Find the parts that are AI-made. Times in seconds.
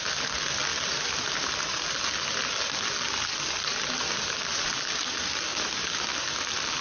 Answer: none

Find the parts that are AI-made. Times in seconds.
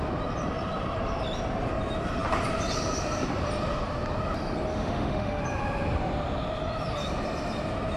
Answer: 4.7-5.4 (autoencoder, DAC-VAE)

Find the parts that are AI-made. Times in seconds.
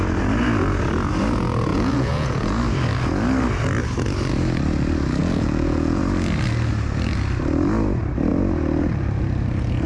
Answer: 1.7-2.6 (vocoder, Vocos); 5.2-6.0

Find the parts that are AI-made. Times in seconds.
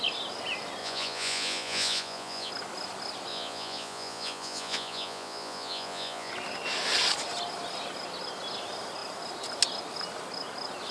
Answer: 0.8-2.5 (vocoder, Vocos); 3.3-6.3